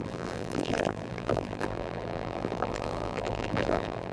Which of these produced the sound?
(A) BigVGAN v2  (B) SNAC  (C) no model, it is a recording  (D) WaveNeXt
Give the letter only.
A